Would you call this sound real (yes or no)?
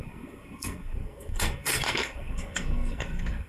no